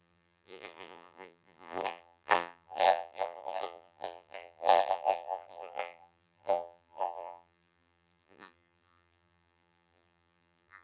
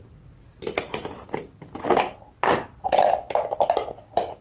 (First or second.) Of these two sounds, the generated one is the first